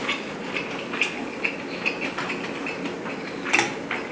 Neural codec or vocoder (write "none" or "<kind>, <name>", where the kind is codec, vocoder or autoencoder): none